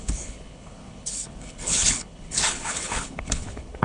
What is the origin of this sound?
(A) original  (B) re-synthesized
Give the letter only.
B